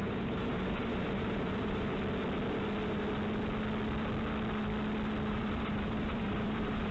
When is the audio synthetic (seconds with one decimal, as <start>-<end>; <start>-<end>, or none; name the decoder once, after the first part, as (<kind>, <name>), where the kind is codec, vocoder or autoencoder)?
0.0-1.9 (vocoder, BigVGAN v2); 5.3-6.9